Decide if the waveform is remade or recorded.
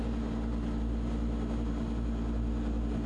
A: recorded